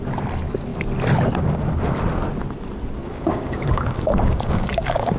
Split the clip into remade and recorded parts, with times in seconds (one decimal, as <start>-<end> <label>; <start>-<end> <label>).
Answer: 0.0-3.0 recorded; 3.0-5.2 remade